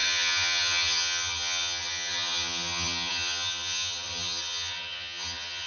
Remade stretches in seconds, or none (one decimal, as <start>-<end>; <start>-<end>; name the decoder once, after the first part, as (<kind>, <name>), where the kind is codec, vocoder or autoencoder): 0.0-5.7 (vocoder, HiFi-GAN)